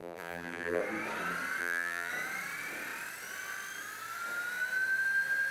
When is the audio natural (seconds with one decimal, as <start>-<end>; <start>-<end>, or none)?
0.8-1.6; 2.1-5.5